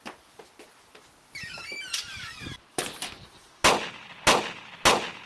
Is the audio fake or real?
real